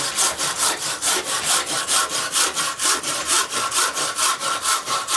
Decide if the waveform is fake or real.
fake